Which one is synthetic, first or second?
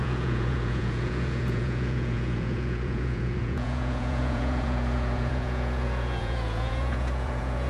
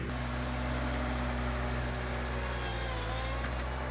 first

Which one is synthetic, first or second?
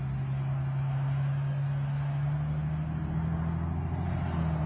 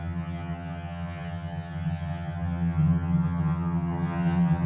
second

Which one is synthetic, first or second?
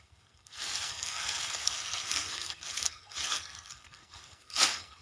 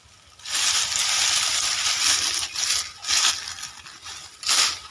first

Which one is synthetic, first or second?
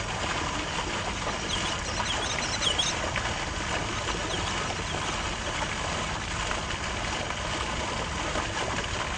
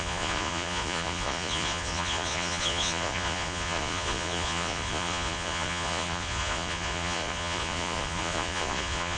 second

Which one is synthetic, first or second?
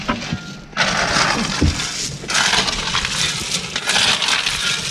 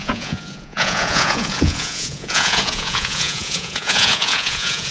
second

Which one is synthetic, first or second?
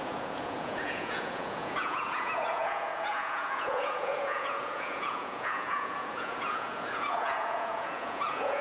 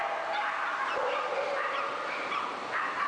first